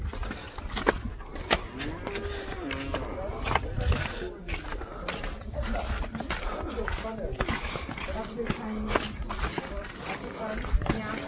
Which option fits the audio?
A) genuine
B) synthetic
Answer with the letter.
A